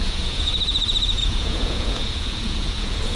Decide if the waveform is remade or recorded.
remade